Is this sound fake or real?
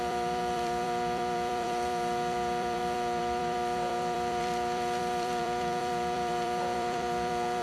fake